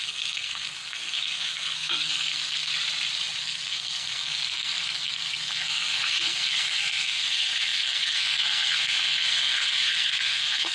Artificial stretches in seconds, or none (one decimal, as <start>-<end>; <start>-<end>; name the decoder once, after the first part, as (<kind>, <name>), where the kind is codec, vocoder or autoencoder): 0.0-2.7 (codec, SNAC); 3.4-10.7